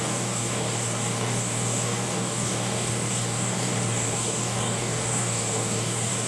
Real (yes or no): no